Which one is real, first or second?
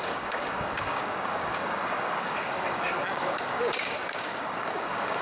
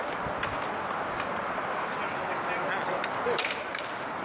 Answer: second